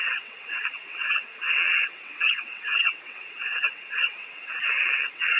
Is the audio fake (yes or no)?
yes